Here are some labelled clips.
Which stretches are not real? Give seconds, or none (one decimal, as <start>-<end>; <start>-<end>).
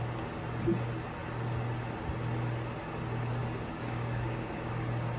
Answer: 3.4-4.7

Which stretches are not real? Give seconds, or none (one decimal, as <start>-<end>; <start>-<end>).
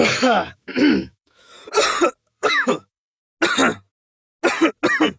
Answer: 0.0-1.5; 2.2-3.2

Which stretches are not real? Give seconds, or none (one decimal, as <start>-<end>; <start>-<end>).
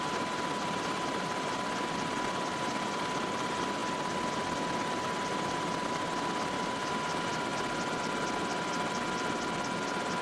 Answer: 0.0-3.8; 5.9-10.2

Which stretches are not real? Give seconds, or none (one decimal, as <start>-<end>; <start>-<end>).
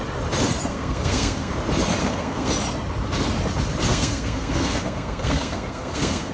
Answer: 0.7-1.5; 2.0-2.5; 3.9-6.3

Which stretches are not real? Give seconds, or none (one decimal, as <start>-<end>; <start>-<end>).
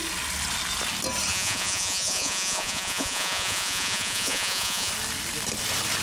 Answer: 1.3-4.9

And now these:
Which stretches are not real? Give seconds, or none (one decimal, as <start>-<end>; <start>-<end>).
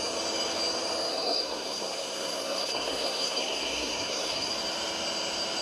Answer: 1.1-4.5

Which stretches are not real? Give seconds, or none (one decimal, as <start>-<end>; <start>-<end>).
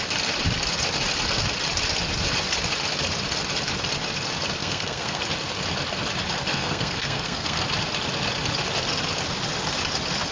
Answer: 4.6-5.2; 6.5-7.6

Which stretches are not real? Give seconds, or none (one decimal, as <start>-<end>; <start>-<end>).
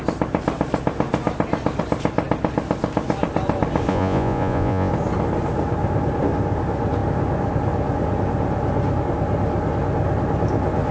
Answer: 3.9-4.9